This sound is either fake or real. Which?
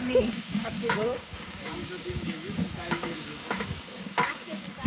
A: fake